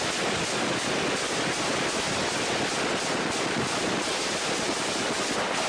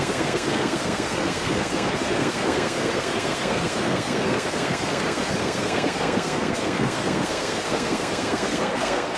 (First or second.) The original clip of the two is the first